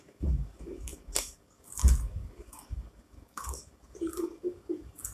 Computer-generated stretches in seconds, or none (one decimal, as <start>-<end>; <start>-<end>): 0.0-5.1